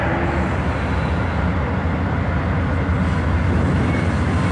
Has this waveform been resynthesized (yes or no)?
no